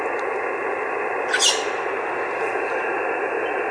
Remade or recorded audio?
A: recorded